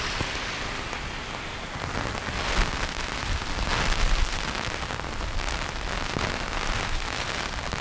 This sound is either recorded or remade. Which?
recorded